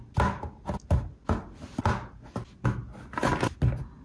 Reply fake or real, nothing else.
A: real